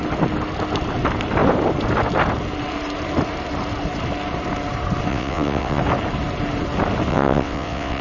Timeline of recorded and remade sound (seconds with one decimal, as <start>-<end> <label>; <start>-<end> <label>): 0.0-5.1 recorded; 5.1-5.8 remade; 5.8-7.1 recorded; 7.1-8.0 remade